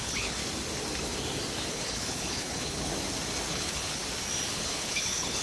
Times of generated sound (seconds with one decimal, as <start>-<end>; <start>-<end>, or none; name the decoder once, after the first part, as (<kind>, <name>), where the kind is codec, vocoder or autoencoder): 0.0-0.4 (codec, HILCodec); 1.7-2.9; 3.5-4.0; 4.5-5.4